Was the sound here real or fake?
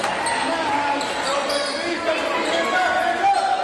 real